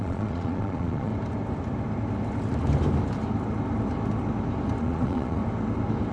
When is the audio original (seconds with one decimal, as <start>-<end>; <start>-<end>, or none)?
1.1-4.8; 5.4-6.1